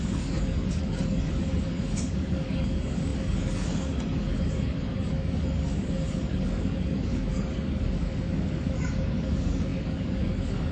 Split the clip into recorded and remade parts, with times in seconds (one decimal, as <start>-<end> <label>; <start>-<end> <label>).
0.0-10.7 remade